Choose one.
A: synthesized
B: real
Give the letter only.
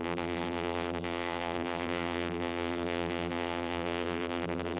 A